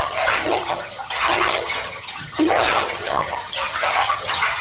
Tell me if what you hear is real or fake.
fake